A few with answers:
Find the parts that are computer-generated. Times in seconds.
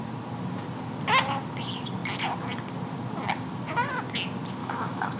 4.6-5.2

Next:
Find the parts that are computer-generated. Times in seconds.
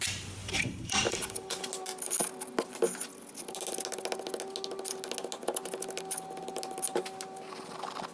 0.4-1.7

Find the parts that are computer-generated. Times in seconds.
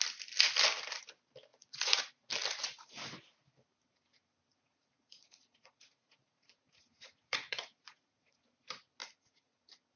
1.5-2.3; 4.5-8.4; 9.0-9.6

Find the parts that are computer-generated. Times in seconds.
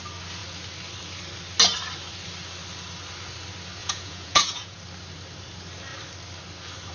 3.8-4.8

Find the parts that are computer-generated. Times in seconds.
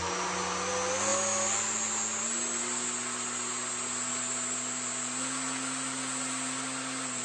none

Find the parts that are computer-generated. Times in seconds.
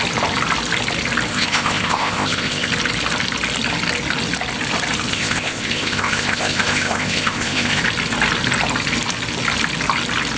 1.3-2.7; 5.1-7.8